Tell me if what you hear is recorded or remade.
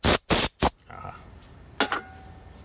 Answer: recorded